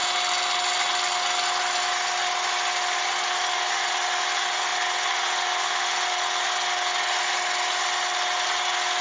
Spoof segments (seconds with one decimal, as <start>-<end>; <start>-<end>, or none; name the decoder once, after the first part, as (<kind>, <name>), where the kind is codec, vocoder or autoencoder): none

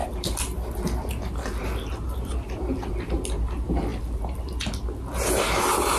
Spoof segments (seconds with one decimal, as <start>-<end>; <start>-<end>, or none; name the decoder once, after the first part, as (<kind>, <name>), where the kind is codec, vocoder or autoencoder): none

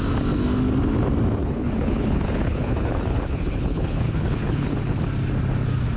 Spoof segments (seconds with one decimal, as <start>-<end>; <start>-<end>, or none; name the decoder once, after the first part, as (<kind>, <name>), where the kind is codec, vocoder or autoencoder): 1.4-5.0 (codec, HILCodec)